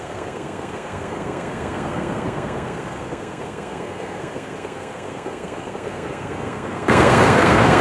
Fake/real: fake